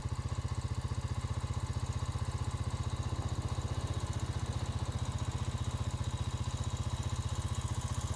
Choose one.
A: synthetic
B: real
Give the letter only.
B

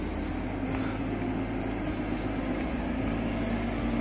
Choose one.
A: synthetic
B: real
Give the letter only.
B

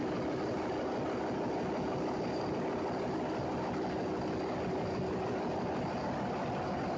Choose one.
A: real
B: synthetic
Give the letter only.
A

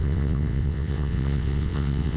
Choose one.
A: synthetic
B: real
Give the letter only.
A